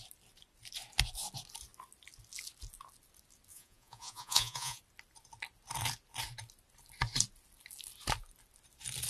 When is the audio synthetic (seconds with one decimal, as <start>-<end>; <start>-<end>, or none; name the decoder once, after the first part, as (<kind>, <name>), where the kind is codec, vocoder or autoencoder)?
3.5-4.8 (vocoder, Vocos)